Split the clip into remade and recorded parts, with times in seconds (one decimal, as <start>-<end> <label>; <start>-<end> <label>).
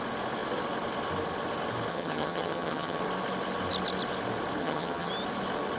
0.0-1.9 recorded; 1.9-3.0 remade; 3.0-4.6 recorded; 4.6-5.1 remade; 5.1-5.8 recorded